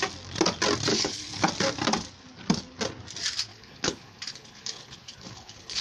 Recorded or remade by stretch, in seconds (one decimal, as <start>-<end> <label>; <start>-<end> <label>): 0.0-0.9 recorded; 0.9-1.5 remade; 1.5-3.5 recorded; 3.5-5.8 remade